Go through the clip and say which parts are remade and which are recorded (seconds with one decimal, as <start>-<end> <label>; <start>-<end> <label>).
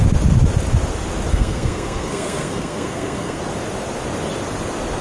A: 0.0-1.3 recorded; 1.3-3.4 remade; 3.4-5.0 recorded